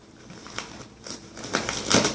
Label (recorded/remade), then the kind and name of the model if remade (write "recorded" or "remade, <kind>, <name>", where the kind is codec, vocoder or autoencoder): recorded